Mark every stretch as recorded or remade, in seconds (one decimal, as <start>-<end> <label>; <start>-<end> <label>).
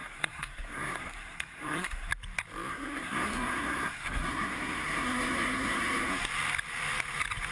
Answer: 0.0-2.1 remade; 2.1-2.7 recorded; 2.7-6.1 remade; 6.1-7.5 recorded